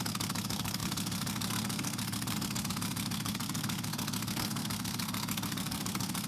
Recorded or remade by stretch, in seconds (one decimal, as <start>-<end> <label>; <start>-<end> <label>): 0.0-6.3 remade